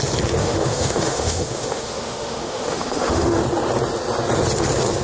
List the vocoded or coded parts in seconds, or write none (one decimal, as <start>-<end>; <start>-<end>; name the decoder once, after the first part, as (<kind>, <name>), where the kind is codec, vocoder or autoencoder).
0.4-3.4 (autoencoder, DAC-VAE)